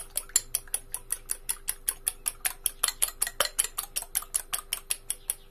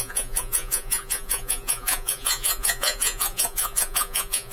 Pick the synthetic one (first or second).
second